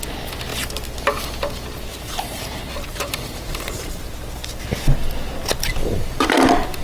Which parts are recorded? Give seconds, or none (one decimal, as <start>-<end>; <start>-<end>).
0.0-1.9; 4.0-6.8

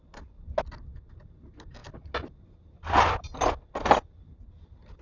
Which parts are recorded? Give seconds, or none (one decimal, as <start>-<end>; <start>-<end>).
0.0-5.0

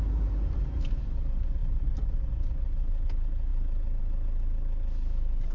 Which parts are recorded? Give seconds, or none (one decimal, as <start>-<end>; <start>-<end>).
0.0-5.5

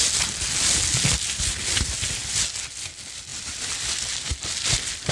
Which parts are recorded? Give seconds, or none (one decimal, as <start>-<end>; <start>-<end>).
0.0-5.1

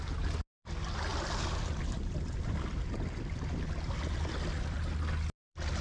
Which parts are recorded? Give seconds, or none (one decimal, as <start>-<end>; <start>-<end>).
0.0-5.8

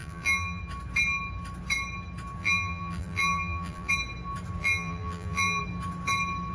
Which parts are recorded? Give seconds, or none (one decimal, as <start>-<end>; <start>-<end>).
0.6-2.4; 3.9-4.6; 5.6-6.5